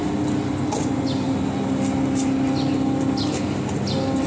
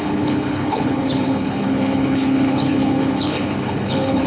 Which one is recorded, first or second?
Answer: first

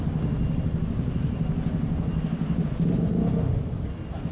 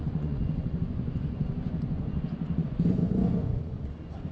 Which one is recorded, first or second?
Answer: first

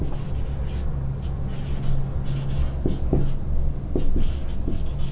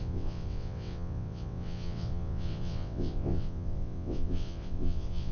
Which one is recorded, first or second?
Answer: first